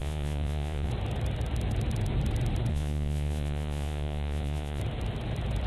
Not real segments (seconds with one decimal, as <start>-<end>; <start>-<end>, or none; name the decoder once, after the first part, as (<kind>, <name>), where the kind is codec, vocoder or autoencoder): 0.0-0.9 (vocoder, Vocos); 2.7-4.8